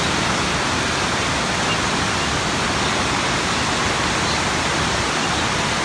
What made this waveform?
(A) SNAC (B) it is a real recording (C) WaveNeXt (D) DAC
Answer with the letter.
B